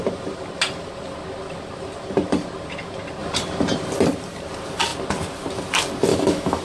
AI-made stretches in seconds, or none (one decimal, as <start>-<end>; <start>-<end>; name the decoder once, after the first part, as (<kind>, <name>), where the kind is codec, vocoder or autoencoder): 6.1-6.6 (autoencoder, DAC-VAE)